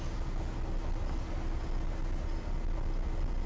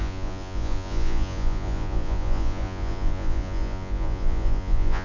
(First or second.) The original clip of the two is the first